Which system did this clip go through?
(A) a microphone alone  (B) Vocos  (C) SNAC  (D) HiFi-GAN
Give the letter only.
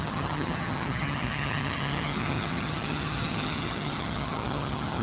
D